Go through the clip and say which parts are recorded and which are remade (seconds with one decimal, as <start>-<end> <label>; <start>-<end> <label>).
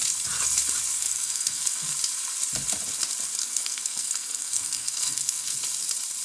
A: 0.0-0.9 recorded; 0.9-1.9 remade; 1.9-3.4 recorded; 3.4-5.6 remade; 5.6-6.2 recorded